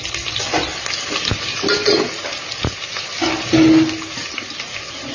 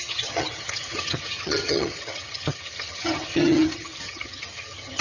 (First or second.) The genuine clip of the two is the first